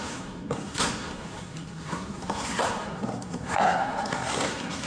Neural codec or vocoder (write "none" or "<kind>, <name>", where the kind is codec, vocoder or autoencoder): codec, SNAC